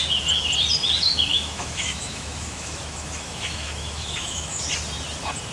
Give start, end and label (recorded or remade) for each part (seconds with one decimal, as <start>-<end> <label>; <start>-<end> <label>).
0.0-1.3 recorded; 1.3-4.6 remade; 4.6-5.5 recorded